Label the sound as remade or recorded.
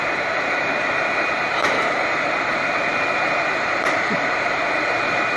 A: remade